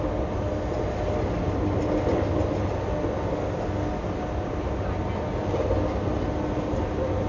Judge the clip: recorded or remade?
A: recorded